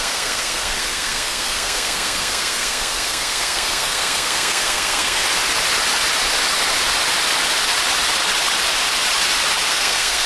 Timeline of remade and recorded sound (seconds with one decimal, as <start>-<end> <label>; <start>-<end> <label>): 0.0-5.2 remade; 5.2-9.7 recorded; 9.7-10.3 remade